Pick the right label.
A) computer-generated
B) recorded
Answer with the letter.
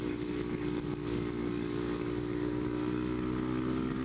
A